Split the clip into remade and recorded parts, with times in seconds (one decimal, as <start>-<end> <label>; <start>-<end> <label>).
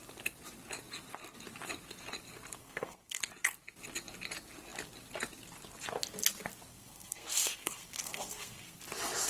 0.0-2.6 recorded; 2.6-3.2 remade; 3.2-6.7 recorded; 6.7-8.8 remade; 8.8-9.3 recorded